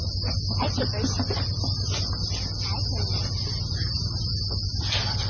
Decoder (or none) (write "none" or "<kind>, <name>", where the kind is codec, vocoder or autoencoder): none